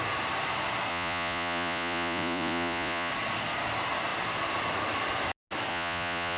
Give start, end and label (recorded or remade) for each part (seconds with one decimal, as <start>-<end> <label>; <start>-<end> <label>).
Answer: 0.0-0.9 recorded; 0.9-3.1 remade; 3.1-5.7 recorded; 5.7-6.4 remade

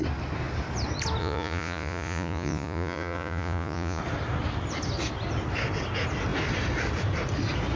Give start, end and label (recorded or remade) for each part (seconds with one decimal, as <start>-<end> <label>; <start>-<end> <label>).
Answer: 0.0-1.2 recorded; 1.2-4.0 remade; 4.0-7.8 recorded

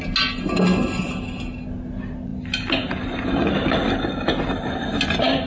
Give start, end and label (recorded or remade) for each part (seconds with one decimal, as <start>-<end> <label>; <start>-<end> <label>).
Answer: 0.0-5.5 recorded

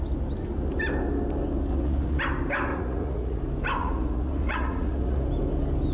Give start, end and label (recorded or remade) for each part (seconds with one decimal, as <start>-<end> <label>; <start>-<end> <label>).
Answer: 0.0-1.7 recorded; 1.7-2.2 remade; 2.2-2.7 recorded; 2.7-3.4 remade; 3.4-3.8 recorded; 3.8-5.3 remade; 5.3-5.9 recorded

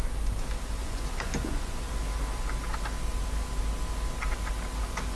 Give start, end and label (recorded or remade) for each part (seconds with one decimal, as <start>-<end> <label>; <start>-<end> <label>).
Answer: 0.0-0.8 recorded; 0.8-1.9 remade; 1.9-5.2 recorded

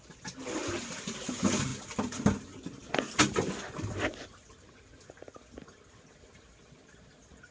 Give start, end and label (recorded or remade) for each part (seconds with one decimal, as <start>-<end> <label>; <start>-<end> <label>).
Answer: 0.0-7.5 recorded

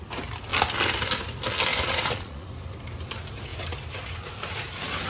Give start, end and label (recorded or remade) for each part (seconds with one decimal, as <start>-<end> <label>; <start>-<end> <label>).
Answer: 0.0-1.7 recorded; 1.7-2.5 remade; 2.5-5.1 recorded

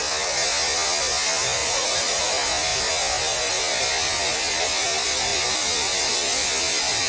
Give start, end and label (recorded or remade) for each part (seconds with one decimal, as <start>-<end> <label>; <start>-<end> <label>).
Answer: 0.0-1.6 recorded; 1.6-2.2 remade; 2.2-7.1 recorded